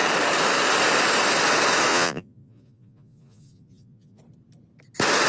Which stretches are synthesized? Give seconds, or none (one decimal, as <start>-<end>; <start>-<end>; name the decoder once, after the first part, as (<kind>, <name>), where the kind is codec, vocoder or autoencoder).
1.9-4.2 (vocoder, Vocos)